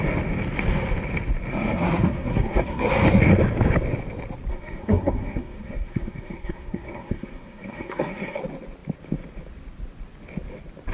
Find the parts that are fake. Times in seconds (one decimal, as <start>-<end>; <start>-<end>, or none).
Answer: 1.5-2.9; 4.5-8.4